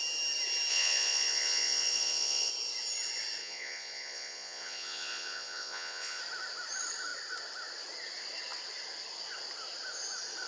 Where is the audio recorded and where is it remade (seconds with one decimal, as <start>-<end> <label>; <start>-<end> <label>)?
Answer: 0.0-0.7 recorded; 0.7-2.5 remade; 2.5-3.4 recorded; 3.4-6.2 remade; 6.2-10.5 recorded

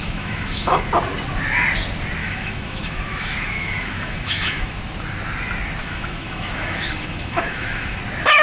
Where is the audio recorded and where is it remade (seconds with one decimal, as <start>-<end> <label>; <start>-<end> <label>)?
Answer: 0.0-0.8 remade; 0.8-2.2 recorded; 2.2-4.8 remade; 4.8-5.8 recorded; 5.8-8.0 remade; 8.0-8.4 recorded

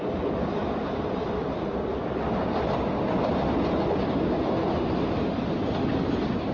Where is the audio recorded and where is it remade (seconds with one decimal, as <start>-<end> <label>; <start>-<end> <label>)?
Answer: 0.0-6.5 recorded

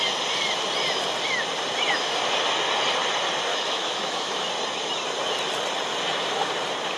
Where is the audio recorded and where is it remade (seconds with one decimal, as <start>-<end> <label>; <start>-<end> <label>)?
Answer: 0.0-3.5 recorded; 3.5-4.5 remade; 4.5-7.0 recorded

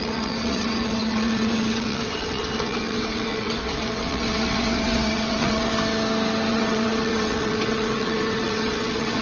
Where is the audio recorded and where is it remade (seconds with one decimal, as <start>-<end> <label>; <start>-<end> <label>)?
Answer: 0.0-5.7 remade; 5.7-6.5 recorded; 6.5-9.2 remade

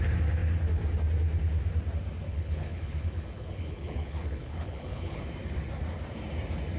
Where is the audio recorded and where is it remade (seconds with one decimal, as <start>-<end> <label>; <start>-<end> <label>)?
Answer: 0.0-2.3 recorded; 2.3-5.2 remade; 5.2-6.8 recorded

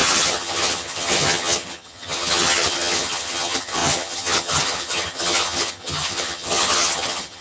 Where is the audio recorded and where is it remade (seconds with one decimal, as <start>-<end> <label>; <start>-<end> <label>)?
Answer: 0.0-7.4 remade